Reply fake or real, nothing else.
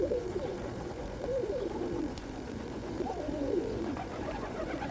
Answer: fake